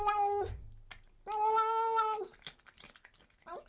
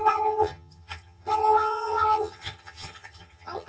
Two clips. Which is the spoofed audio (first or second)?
second